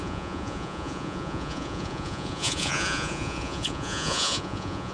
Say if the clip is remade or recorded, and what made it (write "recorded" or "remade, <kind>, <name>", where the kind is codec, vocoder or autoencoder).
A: remade, vocoder, Vocos